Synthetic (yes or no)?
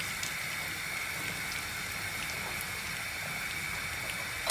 no